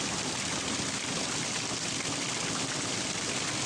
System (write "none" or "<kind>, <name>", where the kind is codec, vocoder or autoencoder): none